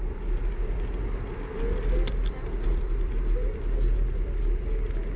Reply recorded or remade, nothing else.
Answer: recorded